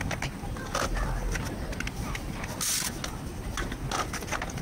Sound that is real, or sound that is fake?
real